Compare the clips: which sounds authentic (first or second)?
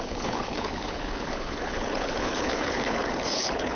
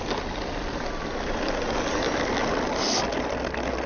second